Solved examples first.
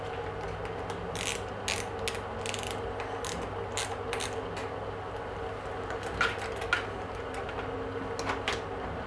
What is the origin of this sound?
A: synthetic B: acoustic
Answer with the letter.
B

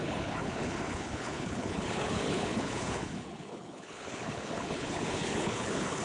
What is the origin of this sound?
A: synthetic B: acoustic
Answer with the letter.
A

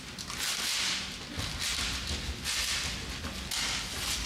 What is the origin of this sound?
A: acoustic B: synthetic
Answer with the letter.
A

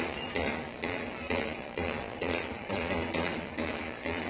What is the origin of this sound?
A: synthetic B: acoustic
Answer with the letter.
A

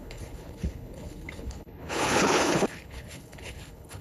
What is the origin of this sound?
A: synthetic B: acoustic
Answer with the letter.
A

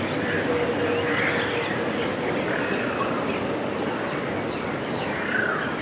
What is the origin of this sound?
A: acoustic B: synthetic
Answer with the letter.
A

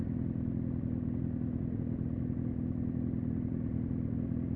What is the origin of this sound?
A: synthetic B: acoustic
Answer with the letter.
B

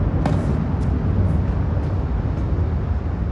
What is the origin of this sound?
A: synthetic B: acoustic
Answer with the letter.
B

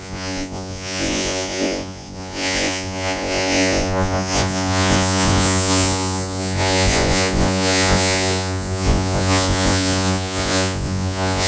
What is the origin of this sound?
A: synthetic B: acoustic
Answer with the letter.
A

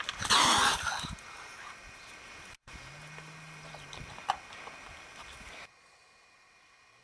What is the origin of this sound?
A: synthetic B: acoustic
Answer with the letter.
B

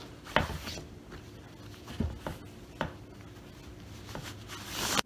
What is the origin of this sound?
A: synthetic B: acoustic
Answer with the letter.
B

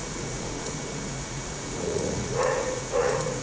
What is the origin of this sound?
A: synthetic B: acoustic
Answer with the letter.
A